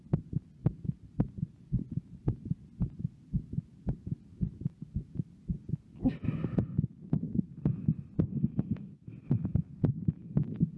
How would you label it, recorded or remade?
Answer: recorded